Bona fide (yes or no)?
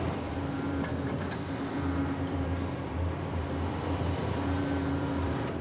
no